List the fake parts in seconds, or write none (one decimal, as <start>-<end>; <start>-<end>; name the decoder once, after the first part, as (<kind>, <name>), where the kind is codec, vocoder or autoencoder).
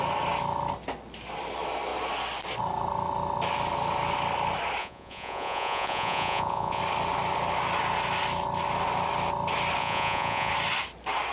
4.8-6.8 (vocoder, Vocos); 9.8-10.5